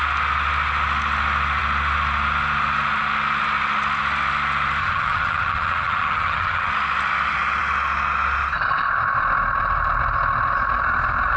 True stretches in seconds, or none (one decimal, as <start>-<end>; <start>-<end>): 0.0-4.8; 6.7-11.4